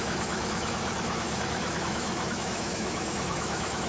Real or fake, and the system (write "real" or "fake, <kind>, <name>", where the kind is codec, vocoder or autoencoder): fake, autoencoder, DAC-VAE